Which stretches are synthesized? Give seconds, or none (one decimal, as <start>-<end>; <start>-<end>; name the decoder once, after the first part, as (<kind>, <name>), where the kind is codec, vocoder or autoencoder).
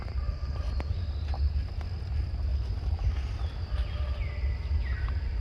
none